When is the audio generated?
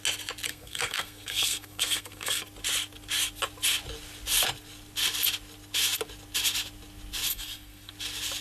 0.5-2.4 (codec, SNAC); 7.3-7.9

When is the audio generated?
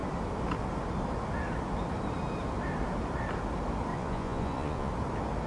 3.9-4.9 (vocoder, Vocos)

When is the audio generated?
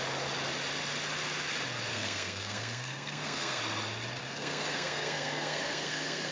1.9-3.6 (codec, SNAC); 4.2-6.3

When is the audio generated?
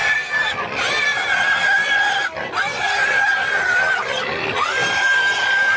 none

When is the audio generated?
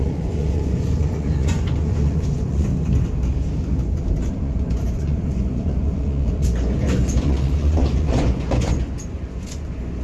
0.0-2.7 (vocoder, Vocos); 4.3-10.0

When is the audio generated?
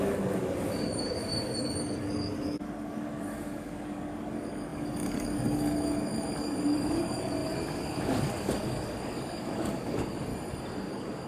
0.0-10.3 (codec, DAC); 10.9-11.3